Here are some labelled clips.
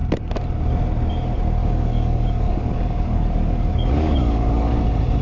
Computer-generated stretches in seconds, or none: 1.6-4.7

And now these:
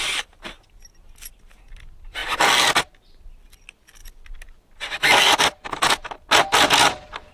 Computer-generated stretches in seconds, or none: none

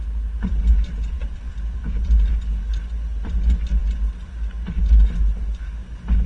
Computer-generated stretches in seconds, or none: 1.2-2.3

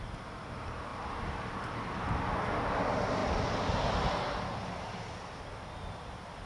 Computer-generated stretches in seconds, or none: none

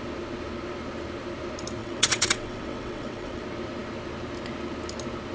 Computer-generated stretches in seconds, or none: 1.8-3.4

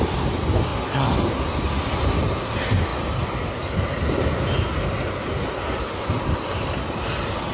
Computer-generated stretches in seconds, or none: none

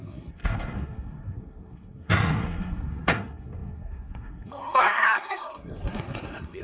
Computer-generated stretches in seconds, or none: 0.0-6.6